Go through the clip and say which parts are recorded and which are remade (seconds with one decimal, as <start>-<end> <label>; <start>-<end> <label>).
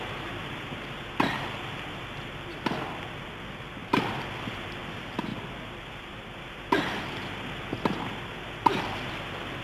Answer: 0.0-9.6 recorded